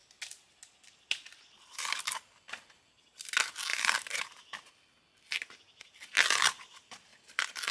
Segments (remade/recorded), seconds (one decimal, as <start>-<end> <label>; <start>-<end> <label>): 0.0-3.7 recorded; 3.7-4.7 remade; 4.7-7.7 recorded